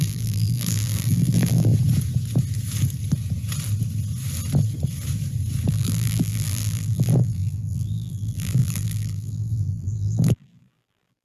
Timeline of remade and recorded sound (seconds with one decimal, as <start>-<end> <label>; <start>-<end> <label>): 0.0-1.7 remade; 1.7-5.7 recorded; 5.7-11.2 remade